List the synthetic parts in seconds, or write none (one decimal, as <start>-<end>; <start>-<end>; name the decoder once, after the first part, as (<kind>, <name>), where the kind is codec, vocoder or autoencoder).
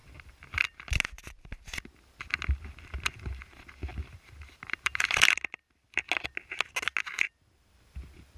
0.0-0.9 (vocoder, BigVGAN v2); 2.9-6.0